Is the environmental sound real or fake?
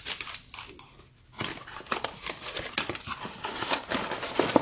real